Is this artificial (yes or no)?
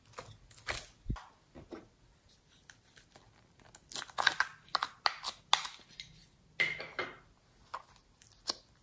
no